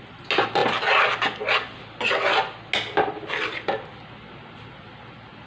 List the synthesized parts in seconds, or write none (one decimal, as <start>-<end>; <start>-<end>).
none